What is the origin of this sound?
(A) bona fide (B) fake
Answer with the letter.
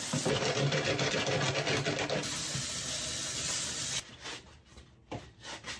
A